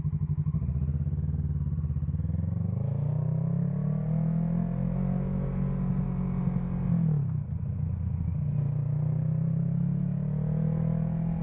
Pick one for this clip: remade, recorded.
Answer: recorded